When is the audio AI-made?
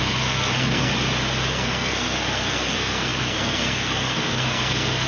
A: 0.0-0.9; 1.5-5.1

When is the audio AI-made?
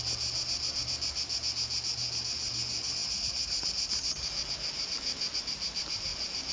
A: 3.0-3.7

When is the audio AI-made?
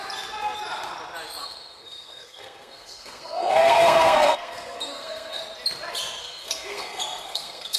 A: 1.4-5.4; 6.2-7.8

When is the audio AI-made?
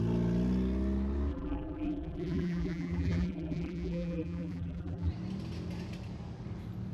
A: 1.3-5.1